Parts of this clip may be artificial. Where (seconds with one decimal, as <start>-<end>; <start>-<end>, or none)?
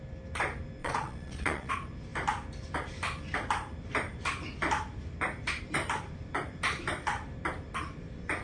0.8-1.7